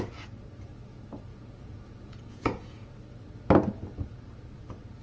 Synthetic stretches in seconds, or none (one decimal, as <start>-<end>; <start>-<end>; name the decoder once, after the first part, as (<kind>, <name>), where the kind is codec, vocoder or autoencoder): 1.3-2.9 (vocoder, Vocos)